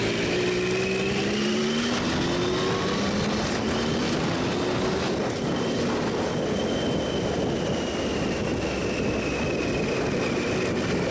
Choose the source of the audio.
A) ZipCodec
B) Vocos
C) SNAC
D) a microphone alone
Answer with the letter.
D